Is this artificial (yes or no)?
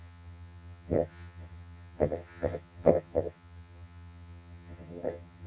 yes